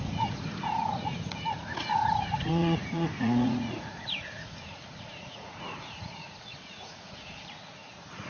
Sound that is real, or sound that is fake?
fake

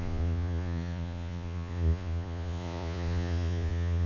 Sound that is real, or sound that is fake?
fake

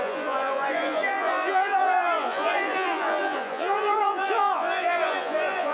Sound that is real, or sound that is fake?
fake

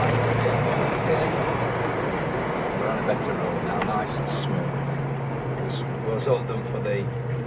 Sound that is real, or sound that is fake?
real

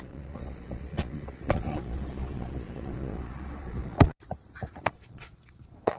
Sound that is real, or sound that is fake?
fake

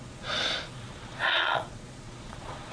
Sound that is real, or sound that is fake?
fake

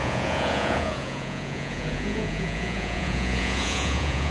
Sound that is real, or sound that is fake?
fake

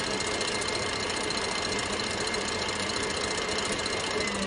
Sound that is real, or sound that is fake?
real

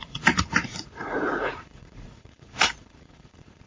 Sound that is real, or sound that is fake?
fake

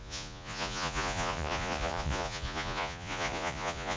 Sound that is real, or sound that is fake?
fake